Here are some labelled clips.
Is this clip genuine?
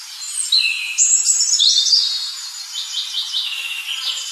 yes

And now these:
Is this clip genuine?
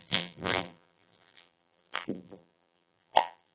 no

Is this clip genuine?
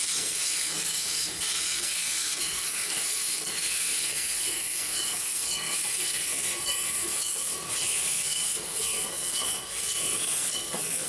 no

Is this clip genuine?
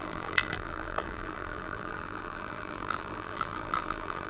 no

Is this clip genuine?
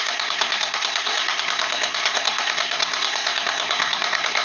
no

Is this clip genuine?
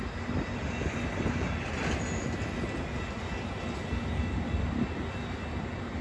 yes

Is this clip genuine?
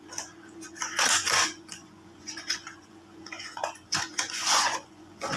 no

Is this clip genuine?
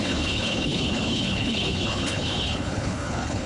no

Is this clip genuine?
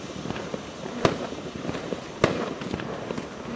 no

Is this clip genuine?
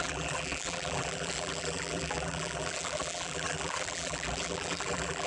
no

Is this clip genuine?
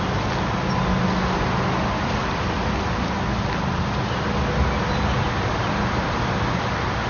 yes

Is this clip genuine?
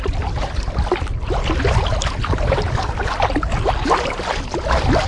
yes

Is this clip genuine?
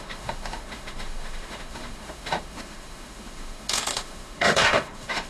no